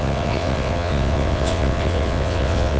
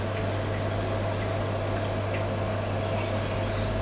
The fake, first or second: first